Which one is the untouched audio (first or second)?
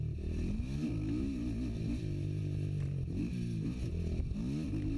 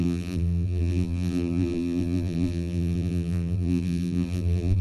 first